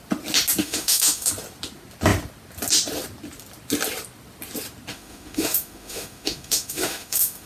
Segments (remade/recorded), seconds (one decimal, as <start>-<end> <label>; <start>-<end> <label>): 0.0-0.6 recorded; 0.6-1.3 remade; 1.3-4.9 recorded; 4.9-7.5 remade

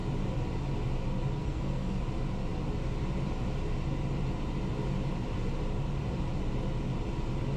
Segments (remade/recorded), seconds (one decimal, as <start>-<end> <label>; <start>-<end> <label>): 0.0-1.4 recorded; 1.4-2.0 remade; 2.0-7.6 recorded

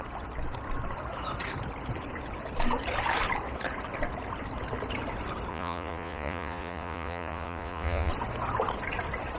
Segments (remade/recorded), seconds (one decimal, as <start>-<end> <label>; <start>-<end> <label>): 0.0-5.5 recorded; 5.5-8.1 remade; 8.1-9.4 recorded